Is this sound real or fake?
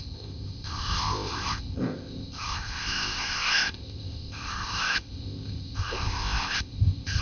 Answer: fake